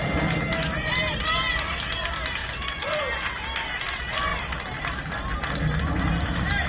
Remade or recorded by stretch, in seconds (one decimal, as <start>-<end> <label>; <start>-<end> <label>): 0.0-2.4 recorded; 2.4-3.0 remade; 3.0-6.7 recorded